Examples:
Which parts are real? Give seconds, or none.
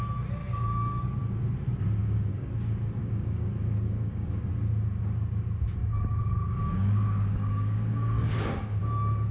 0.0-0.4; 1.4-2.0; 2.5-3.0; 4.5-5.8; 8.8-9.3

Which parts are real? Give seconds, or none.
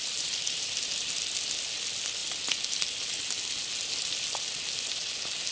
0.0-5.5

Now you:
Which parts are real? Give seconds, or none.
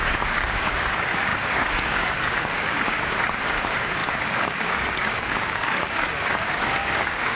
none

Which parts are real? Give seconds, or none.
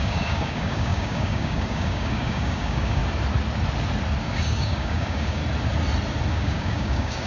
3.0-4.2; 5.4-6.3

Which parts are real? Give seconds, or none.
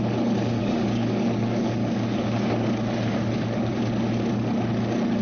0.0-0.6; 3.7-5.2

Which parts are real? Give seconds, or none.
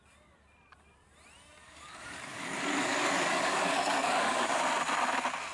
0.0-1.6; 4.6-5.5